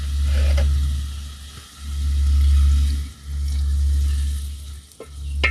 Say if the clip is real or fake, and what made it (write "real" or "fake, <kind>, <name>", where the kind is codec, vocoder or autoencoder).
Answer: real